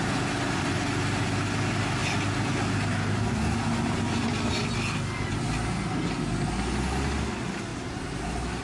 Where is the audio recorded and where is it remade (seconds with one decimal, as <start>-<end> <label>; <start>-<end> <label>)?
0.0-7.7 recorded; 7.7-8.6 remade